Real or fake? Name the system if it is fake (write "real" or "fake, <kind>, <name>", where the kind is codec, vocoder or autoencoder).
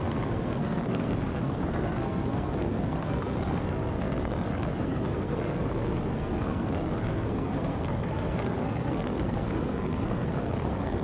fake, codec, SNAC